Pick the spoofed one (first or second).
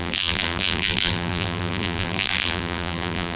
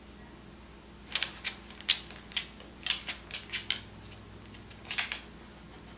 first